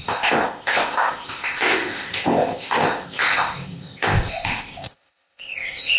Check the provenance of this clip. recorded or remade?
remade